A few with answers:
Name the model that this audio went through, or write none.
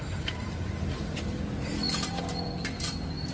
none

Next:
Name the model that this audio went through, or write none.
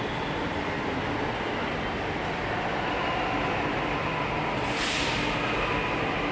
none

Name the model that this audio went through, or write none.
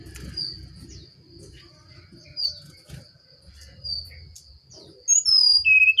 none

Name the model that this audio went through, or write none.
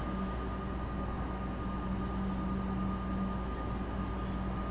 none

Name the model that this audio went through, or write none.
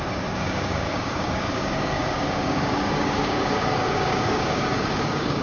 codec, DAC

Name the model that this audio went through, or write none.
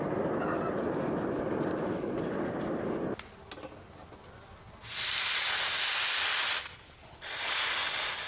none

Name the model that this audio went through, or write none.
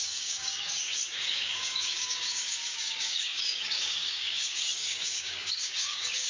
codec, DAC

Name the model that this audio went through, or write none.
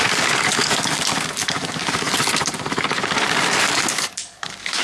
codec, DAC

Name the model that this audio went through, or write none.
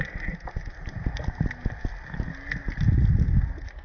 none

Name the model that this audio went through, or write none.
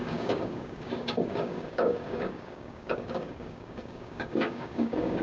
codec, DAC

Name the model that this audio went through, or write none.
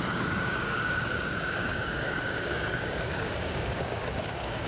codec, DAC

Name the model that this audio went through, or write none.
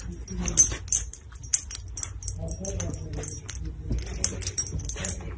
none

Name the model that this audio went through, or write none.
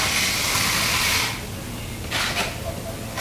none